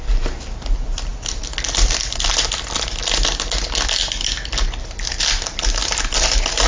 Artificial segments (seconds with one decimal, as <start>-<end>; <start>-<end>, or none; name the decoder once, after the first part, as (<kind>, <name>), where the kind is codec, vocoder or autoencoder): none